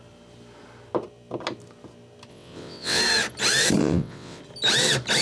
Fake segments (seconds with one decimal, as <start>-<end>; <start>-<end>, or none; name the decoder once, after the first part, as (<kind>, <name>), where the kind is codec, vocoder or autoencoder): 2.3-3.0 (vocoder, WaveNeXt); 3.8-4.4